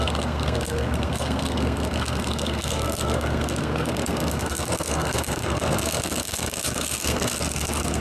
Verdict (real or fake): fake